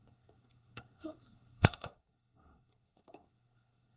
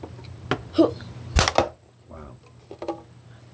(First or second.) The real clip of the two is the second